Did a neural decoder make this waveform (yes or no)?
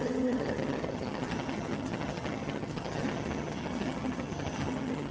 yes